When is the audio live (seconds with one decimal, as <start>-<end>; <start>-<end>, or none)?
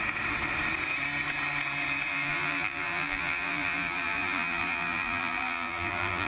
0.0-2.1